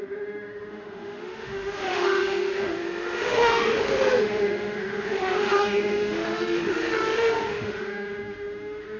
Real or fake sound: fake